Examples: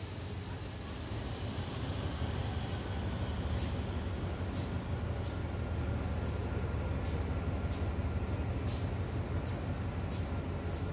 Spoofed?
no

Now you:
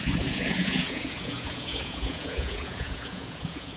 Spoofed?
yes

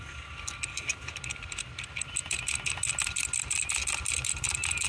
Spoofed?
no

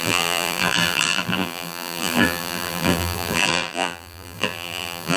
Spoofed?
yes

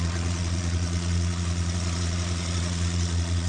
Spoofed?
yes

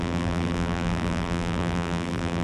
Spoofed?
yes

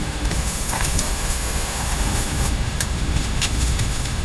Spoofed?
yes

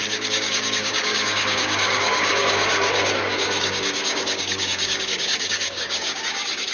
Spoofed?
yes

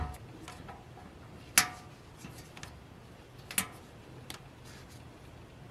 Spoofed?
no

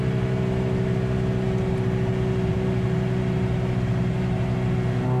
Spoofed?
no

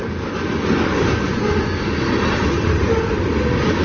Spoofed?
no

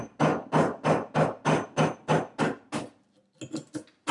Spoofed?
no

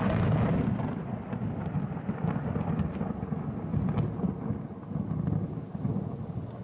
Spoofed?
no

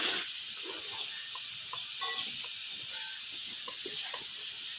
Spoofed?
no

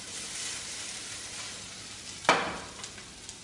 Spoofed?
no